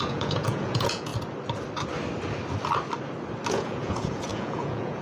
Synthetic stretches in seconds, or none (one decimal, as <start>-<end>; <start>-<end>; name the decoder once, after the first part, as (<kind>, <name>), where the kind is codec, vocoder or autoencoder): 0.0-1.1 (vocoder, Vocos); 3.5-5.0